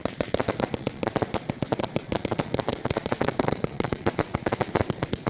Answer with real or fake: fake